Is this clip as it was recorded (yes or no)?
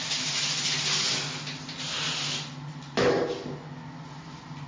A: yes